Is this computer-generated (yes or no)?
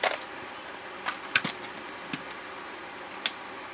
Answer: no